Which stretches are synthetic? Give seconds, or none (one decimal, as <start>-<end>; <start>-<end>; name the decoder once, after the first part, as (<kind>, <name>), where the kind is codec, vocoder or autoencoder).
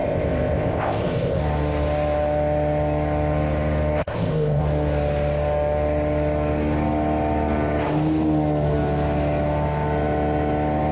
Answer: 0.0-1.4 (codec, ZipCodec); 4.0-4.6